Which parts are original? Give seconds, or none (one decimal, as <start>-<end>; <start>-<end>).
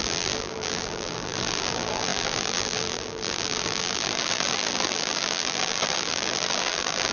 none